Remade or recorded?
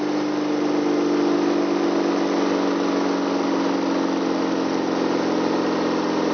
recorded